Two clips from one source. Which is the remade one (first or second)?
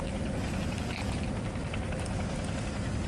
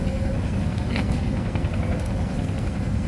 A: second